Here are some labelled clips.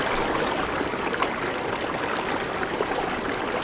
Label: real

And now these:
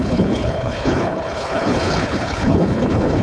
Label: fake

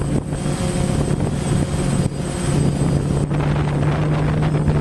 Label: real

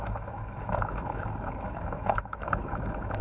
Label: fake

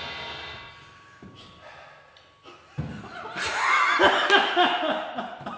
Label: real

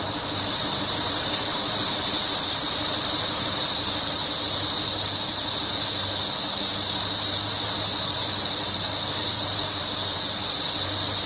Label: fake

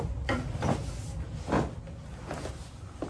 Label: real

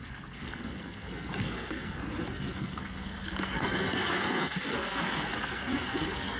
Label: fake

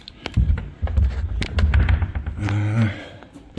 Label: real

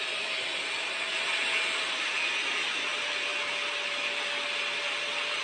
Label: real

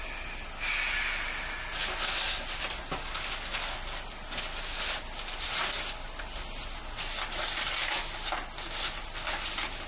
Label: real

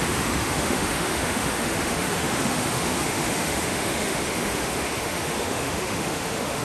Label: fake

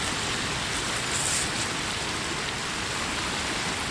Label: real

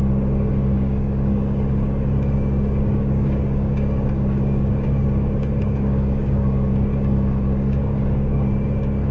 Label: fake